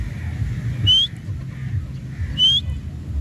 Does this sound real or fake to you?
real